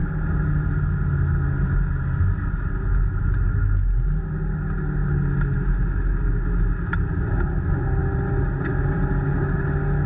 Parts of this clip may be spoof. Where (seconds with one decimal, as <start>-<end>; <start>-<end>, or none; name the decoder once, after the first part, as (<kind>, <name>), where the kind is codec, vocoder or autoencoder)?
none